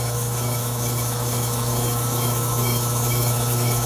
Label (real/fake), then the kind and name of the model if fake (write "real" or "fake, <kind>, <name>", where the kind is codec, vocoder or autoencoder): fake, autoencoder, DAC-VAE